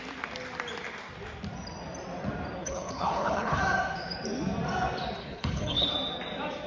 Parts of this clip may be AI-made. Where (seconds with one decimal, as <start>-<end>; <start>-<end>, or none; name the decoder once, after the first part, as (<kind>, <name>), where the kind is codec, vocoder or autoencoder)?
2.6-3.6 (codec, HILCodec); 5.2-5.9